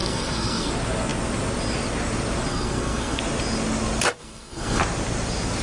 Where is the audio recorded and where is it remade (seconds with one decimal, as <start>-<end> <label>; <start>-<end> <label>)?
0.0-0.7 remade; 0.7-2.5 recorded; 2.5-3.2 remade; 3.2-4.2 recorded; 4.2-4.8 remade; 4.8-5.6 recorded